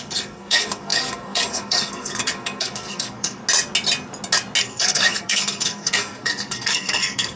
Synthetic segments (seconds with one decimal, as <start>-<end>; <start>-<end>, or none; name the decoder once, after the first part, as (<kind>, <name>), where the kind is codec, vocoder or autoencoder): 0.0-3.4 (codec, SNAC); 4.6-7.4